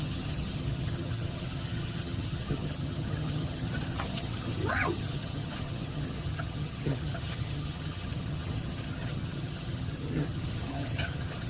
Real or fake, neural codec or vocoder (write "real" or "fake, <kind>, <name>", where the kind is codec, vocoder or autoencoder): fake, vocoder, HiFi-GAN